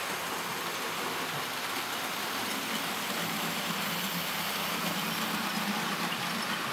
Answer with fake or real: real